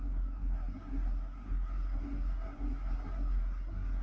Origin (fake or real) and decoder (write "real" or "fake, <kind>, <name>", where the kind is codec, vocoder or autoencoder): fake, codec, SNAC